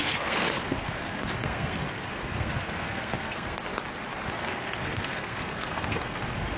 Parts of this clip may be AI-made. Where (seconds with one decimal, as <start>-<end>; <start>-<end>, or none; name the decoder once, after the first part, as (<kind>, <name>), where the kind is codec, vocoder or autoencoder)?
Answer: 0.0-3.6 (codec, SNAC); 4.4-6.6

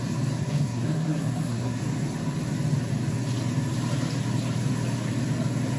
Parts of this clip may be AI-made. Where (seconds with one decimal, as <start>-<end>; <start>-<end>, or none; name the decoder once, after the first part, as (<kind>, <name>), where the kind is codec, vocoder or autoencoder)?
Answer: 0.4-1.8 (codec, SNAC)